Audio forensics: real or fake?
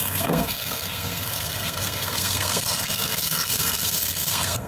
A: fake